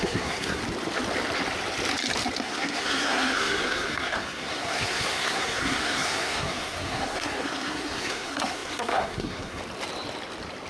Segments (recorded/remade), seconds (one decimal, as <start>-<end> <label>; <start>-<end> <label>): 0.0-0.6 remade; 0.6-2.4 recorded; 2.4-9.6 remade; 9.6-10.7 recorded